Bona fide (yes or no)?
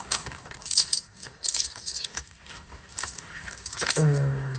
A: no